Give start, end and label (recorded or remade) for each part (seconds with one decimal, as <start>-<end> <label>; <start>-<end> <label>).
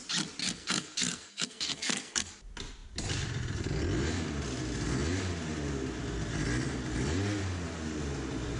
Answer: 0.0-0.4 recorded; 0.4-2.3 remade; 2.3-8.6 recorded